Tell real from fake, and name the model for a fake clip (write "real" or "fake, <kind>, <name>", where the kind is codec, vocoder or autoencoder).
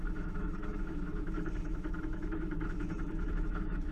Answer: fake, autoencoder, DAC-VAE